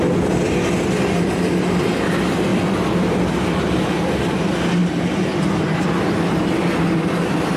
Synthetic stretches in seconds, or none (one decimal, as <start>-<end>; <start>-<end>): none